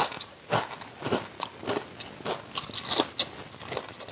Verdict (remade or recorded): recorded